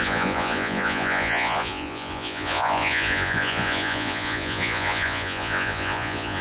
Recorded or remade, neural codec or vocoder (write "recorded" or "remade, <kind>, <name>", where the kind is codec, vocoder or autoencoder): remade, vocoder, Vocos